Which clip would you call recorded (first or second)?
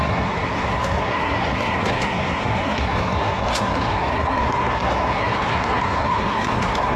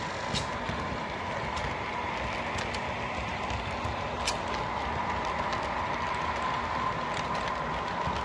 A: second